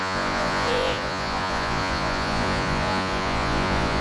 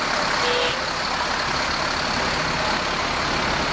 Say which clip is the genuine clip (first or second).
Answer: second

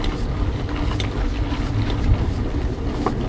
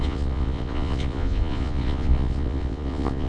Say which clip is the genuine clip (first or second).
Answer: first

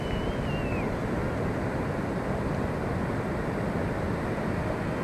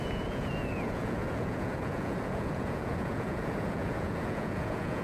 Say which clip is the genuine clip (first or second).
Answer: first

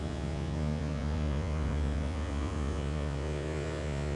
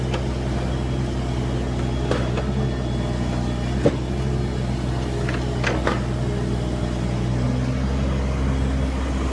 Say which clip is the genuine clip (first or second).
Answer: second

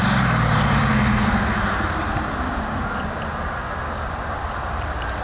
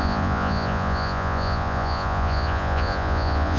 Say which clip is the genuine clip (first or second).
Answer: first